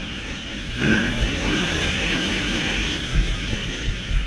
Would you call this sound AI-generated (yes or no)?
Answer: yes